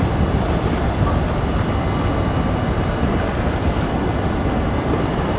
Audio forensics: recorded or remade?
recorded